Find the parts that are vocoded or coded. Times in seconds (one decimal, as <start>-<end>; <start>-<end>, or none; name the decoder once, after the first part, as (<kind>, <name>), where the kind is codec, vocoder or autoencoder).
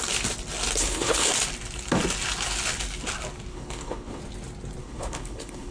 0.8-1.3 (codec, HILCodec); 3.5-4.2; 4.8-5.7